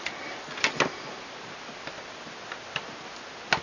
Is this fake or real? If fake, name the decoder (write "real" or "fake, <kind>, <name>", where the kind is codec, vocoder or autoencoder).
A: real